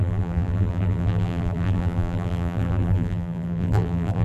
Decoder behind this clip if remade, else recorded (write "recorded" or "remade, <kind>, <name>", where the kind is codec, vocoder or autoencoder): remade, vocoder, BigVGAN v2